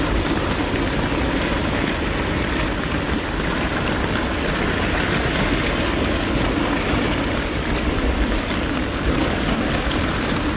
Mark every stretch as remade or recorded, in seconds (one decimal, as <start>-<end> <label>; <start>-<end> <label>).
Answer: 0.0-10.6 recorded